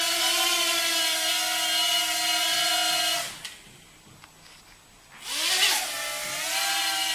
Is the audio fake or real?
real